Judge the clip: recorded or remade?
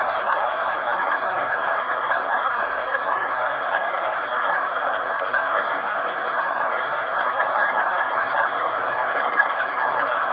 remade